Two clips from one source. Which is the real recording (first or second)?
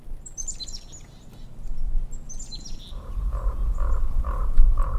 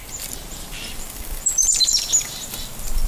first